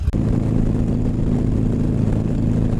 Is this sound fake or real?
real